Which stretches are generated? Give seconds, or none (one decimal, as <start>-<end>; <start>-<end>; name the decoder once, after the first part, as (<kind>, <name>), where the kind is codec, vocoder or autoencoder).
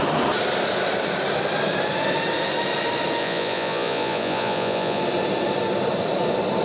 3.2-5.0 (vocoder, Vocos)